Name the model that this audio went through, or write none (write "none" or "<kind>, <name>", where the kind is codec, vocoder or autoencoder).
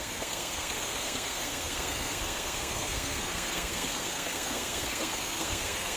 codec, SNAC